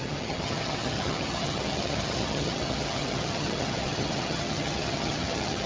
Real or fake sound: fake